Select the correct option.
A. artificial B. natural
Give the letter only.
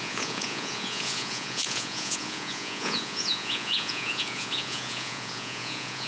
A